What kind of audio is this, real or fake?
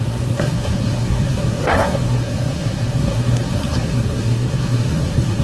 fake